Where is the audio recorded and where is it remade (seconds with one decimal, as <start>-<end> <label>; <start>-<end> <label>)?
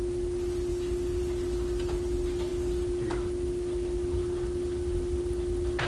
0.0-5.9 recorded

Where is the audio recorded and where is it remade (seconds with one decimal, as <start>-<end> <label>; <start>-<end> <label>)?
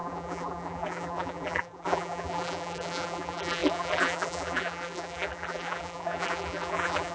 0.0-7.1 remade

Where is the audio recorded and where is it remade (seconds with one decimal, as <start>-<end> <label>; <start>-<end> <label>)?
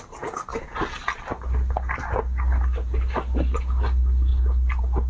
0.0-4.3 recorded; 4.3-5.1 remade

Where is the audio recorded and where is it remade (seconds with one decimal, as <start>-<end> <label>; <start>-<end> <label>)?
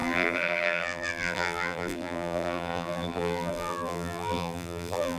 0.0-5.2 remade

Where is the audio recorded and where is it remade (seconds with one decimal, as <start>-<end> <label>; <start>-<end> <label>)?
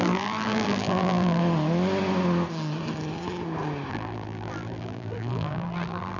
0.0-1.4 remade; 1.4-3.9 recorded; 3.9-6.2 remade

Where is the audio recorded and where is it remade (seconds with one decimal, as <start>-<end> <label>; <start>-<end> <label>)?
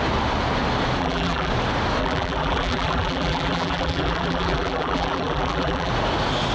0.0-1.0 recorded; 1.0-1.5 remade; 1.5-2.0 recorded; 2.0-5.9 remade; 5.9-6.5 recorded